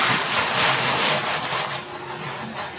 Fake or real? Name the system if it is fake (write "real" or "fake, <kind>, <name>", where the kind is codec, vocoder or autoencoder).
real